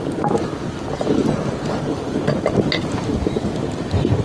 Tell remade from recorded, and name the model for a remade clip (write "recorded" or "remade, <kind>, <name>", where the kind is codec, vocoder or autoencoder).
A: recorded